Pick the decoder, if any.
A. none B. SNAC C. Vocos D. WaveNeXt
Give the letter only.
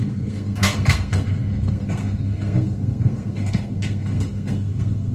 B